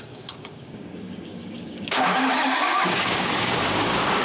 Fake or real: fake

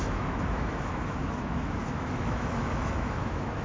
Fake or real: fake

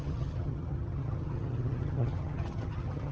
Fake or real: fake